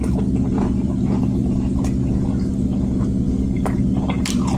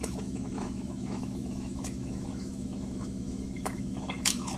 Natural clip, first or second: first